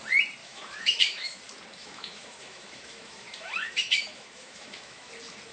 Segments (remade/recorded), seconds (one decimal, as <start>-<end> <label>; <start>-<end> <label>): 0.0-0.4 recorded; 0.4-1.4 remade; 1.4-1.8 recorded; 1.8-5.1 remade; 5.1-5.5 recorded